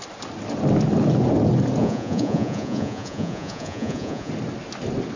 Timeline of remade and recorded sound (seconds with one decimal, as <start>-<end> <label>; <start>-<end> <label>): 0.0-1.8 recorded; 1.8-4.3 remade; 4.3-5.2 recorded

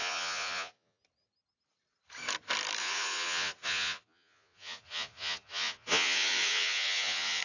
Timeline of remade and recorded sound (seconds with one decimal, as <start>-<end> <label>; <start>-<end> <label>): 0.0-1.0 remade; 1.0-2.8 recorded; 2.8-7.4 remade

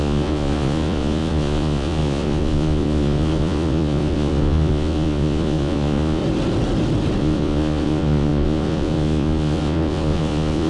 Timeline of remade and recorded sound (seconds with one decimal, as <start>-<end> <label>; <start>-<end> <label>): 0.0-6.2 remade; 6.2-7.2 recorded; 7.2-10.7 remade

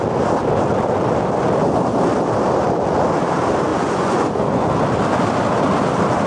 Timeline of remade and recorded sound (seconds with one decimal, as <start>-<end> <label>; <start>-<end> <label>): 0.0-3.7 recorded; 3.7-4.7 remade; 4.7-6.3 recorded